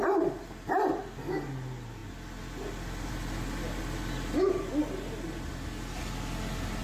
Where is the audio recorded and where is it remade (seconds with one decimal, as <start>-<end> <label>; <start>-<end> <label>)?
0.0-6.8 recorded